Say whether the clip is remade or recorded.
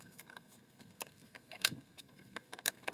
remade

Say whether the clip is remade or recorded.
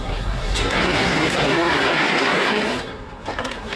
remade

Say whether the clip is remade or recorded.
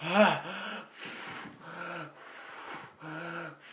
recorded